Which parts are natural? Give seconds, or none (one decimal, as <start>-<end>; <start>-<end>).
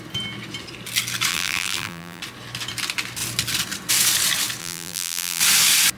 0.0-1.3; 2.2-4.6; 5.4-6.0